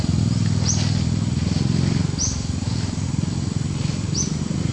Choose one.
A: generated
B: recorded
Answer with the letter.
B